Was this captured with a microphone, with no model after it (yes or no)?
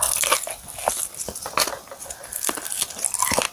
yes